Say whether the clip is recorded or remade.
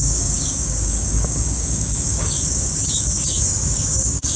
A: remade